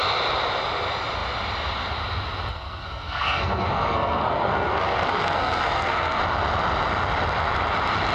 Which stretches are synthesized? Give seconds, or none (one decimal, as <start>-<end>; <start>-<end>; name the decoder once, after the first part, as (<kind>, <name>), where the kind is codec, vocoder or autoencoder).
2.5-6.2 (codec, SNAC)